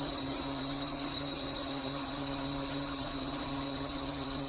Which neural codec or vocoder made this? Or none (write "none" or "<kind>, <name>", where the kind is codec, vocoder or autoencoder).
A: vocoder, HiFi-GAN